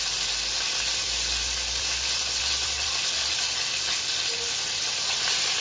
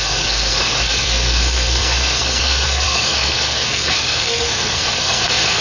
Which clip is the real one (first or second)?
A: first